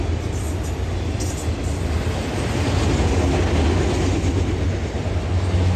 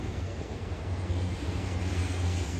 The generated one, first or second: second